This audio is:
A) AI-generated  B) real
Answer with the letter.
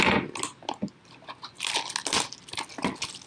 B